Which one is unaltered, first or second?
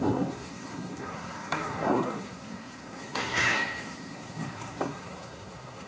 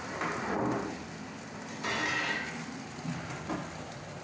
second